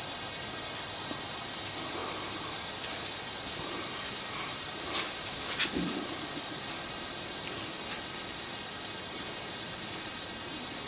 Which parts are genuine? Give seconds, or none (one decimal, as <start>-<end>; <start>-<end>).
0.0-10.9